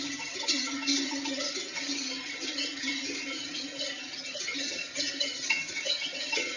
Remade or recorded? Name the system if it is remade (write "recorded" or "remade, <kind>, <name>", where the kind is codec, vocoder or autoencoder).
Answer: remade, vocoder, HiFi-GAN